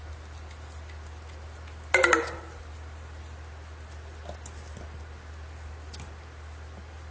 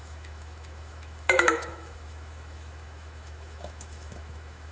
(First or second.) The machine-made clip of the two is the second